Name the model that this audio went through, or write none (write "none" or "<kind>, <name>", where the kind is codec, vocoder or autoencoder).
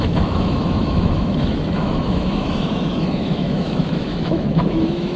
autoencoder, DAC-VAE